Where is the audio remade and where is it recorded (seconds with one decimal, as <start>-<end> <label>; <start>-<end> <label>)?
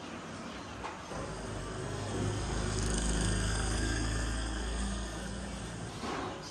0.0-1.6 recorded; 1.6-5.4 remade; 5.4-6.5 recorded